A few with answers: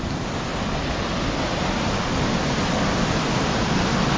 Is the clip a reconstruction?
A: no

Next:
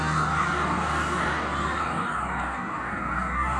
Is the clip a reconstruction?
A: yes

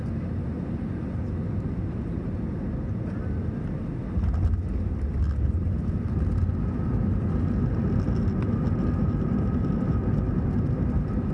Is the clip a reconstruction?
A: no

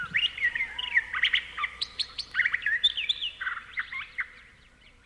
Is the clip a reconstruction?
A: yes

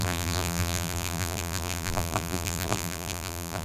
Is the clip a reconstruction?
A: yes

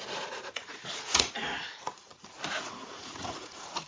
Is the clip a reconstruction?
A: yes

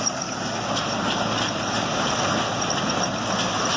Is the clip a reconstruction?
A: no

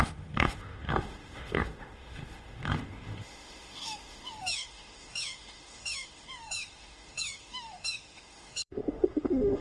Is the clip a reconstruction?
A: yes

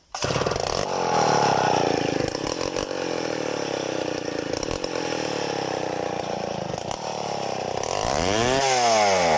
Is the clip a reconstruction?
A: no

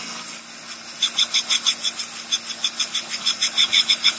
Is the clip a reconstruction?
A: no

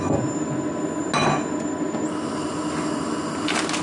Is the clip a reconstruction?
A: no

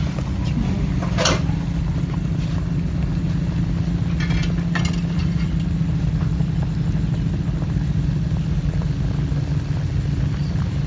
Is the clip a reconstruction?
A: no